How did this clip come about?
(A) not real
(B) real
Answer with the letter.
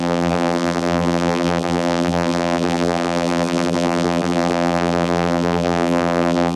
A